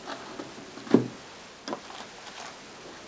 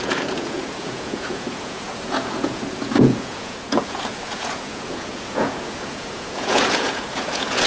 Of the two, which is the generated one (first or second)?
second